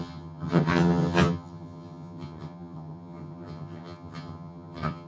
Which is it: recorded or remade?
remade